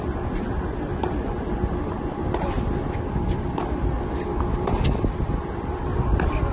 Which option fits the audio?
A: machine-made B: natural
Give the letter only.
A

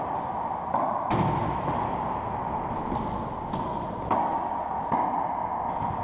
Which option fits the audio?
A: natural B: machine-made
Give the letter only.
A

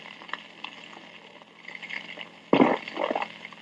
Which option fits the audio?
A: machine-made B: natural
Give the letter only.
B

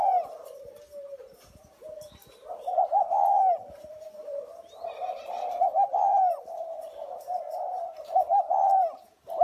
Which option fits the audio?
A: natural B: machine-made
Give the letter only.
B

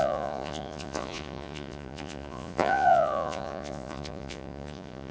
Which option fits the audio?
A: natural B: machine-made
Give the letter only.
B